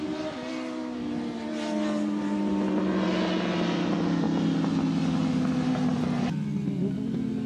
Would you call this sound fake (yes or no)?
no